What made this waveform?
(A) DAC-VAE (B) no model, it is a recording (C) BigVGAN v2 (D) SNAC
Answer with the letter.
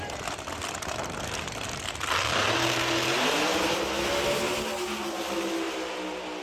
B